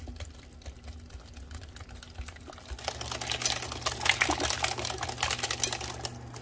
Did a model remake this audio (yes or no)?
no